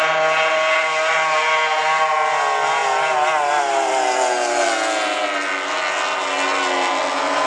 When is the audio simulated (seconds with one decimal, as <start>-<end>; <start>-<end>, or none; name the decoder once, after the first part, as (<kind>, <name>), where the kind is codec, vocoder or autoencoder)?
none